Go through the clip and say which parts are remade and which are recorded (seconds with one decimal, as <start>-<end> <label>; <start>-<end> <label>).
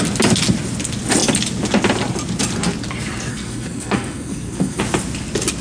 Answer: 0.0-3.3 recorded; 3.3-4.8 remade; 4.8-5.6 recorded